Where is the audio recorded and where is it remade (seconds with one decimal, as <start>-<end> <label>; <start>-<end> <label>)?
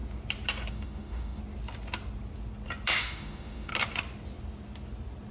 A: 0.0-0.7 recorded; 0.7-1.4 remade; 1.4-3.0 recorded; 3.0-3.7 remade; 3.7-5.3 recorded